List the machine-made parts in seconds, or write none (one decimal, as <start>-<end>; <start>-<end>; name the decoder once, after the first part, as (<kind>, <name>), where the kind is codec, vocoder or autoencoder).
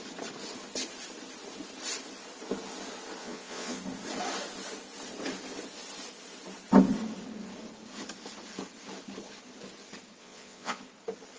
3.2-3.8 (vocoder, Vocos); 10.2-10.8